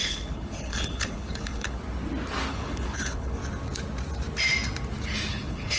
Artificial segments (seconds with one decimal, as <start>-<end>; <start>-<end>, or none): 0.0-1.8; 2.5-3.4; 5.3-5.8

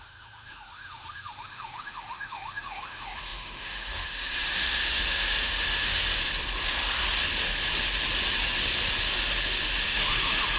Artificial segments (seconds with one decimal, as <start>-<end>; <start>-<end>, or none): 0.0-6.1; 9.8-10.6

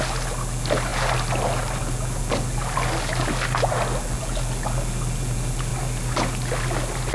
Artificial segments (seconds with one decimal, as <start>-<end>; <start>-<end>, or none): none